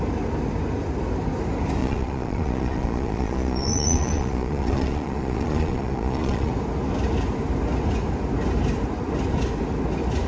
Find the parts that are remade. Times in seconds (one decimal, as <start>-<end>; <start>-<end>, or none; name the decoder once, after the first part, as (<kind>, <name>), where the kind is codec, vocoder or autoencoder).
1.8-6.5 (vocoder, Vocos)